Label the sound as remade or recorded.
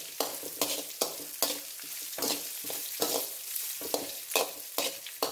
recorded